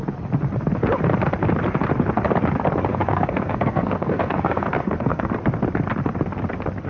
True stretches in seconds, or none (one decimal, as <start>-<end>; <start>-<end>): 0.0-2.9; 5.3-6.9